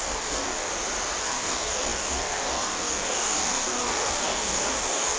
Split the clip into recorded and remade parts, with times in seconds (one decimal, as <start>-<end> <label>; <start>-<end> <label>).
0.0-0.7 remade; 0.7-1.2 recorded; 1.2-5.2 remade